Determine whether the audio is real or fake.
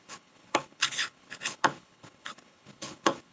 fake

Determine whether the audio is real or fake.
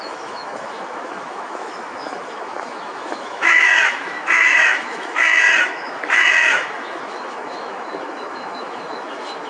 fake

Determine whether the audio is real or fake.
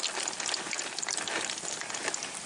real